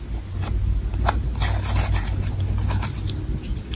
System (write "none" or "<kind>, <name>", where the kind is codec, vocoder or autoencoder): none